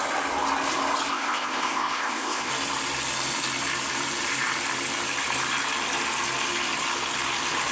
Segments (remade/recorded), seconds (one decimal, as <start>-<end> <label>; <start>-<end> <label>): 0.0-1.1 recorded; 1.1-2.5 remade; 2.5-7.7 recorded